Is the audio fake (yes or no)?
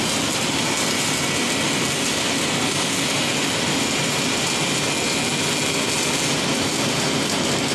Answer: no